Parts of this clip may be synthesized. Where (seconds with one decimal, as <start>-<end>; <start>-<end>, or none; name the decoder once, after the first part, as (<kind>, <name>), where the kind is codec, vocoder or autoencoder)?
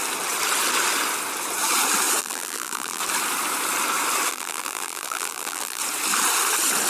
2.2-3.0 (vocoder, BigVGAN v2); 4.3-5.8